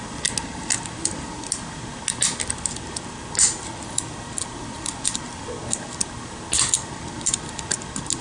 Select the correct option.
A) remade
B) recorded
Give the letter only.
B